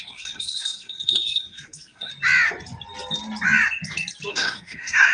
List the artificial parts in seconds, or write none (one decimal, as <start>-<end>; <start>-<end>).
0.0-2.1; 4.3-5.1